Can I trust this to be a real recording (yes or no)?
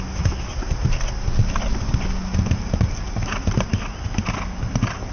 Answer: yes